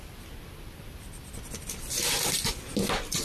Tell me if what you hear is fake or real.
real